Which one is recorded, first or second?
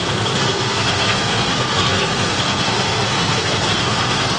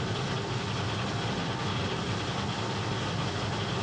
second